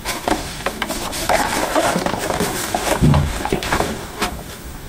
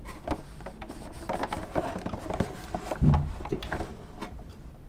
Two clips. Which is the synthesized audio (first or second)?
first